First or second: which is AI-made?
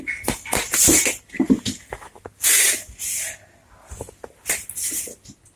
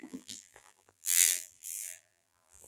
second